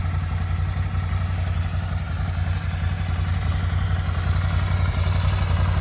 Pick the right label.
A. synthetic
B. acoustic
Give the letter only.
B